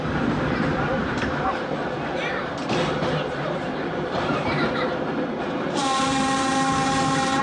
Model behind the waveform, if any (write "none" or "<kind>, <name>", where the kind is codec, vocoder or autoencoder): vocoder, BigVGAN v2